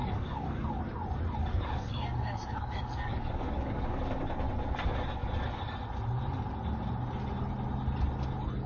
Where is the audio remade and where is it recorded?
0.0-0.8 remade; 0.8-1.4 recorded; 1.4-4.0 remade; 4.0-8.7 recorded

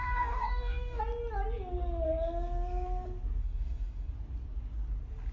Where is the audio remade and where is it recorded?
0.0-1.0 remade; 1.0-3.4 recorded; 3.4-4.1 remade; 4.1-5.3 recorded

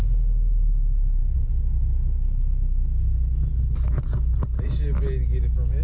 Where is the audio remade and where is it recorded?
0.0-5.8 recorded